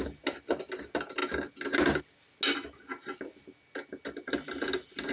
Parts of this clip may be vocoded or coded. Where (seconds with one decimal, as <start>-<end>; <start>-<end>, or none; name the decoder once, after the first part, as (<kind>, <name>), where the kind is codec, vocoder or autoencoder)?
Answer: none

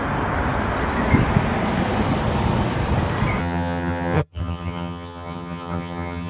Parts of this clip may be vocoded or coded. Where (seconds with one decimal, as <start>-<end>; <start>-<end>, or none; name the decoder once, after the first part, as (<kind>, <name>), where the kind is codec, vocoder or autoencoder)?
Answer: 3.4-6.3 (vocoder, HiFi-GAN)

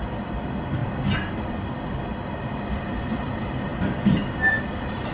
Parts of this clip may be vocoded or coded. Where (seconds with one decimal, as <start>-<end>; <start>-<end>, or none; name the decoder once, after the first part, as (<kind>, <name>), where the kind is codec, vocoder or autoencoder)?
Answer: none

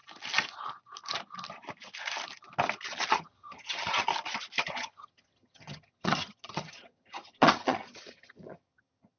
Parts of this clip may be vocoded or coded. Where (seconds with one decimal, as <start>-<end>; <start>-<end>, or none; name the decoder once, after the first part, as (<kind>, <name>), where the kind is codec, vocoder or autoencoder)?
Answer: 3.1-4.1 (vocoder, HiFi-GAN); 4.6-9.2

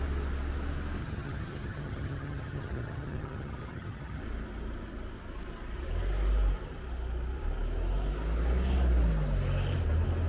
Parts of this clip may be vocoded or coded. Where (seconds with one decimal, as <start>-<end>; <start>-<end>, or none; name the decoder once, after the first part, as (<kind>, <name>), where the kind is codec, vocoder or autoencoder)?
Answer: 1.0-4.2 (vocoder, HiFi-GAN)

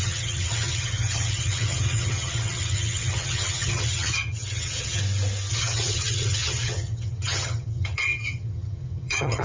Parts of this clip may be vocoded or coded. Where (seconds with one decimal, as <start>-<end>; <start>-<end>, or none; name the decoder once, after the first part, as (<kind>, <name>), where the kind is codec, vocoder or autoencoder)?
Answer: 0.0-5.0 (vocoder, HiFi-GAN); 5.5-9.4

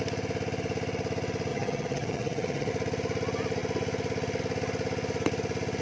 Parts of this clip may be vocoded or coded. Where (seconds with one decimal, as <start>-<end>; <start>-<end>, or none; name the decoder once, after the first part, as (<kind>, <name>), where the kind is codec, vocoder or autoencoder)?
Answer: 1.5-2.7 (vocoder, HiFi-GAN)

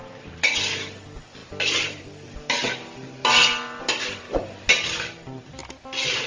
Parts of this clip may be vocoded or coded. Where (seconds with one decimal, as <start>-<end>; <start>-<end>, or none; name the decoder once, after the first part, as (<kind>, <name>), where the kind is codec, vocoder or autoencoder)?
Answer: none